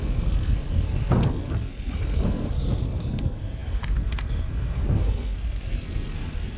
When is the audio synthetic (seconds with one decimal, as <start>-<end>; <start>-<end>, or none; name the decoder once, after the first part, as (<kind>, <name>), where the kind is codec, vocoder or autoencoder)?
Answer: 0.0-6.6 (codec, SNAC)